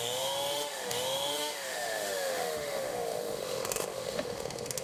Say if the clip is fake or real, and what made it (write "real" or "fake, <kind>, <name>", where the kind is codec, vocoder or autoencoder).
fake, autoencoder, DAC-VAE